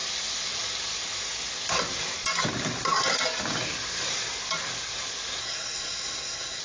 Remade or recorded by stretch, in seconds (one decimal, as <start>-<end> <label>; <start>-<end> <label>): 0.0-5.4 recorded; 5.4-6.6 remade